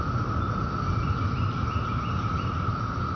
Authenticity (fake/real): real